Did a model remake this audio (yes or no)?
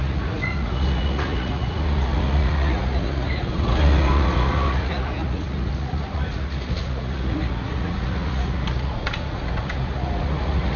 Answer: yes